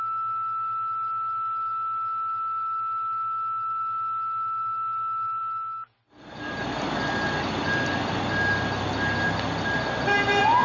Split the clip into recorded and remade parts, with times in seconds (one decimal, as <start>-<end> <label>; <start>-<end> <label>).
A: 0.0-10.6 recorded